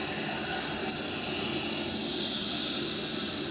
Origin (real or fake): real